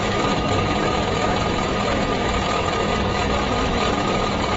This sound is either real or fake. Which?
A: fake